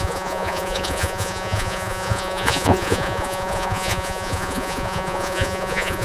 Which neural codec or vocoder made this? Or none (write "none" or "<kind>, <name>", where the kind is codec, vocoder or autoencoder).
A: vocoder, Vocos